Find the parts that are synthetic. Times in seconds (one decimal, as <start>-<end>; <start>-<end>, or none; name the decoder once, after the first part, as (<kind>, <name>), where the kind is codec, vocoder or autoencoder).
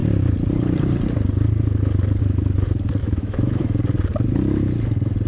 3.0-3.6 (autoencoder, DAC-VAE)